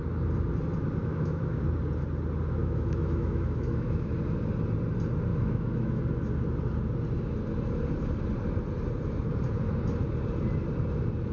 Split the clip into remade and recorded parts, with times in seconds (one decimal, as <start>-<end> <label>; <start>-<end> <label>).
0.0-1.0 recorded; 1.0-1.6 remade; 1.6-2.6 recorded; 2.6-4.1 remade; 4.1-5.3 recorded; 5.3-6.0 remade; 6.0-11.3 recorded